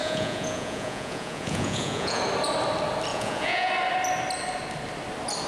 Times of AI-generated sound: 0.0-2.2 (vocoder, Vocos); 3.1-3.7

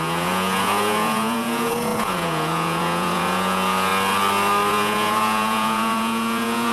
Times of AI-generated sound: 0.0-3.9 (vocoder, Vocos); 4.7-6.7

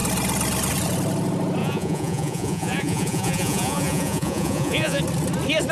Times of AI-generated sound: 1.6-5.0 (vocoder, Vocos)

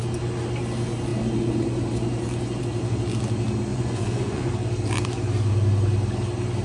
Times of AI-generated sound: 3.7-4.5 (vocoder, Vocos)

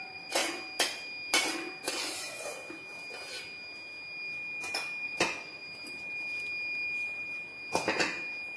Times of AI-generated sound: 0.0-0.4 (vocoder, Vocos); 1.8-2.5; 5.0-5.6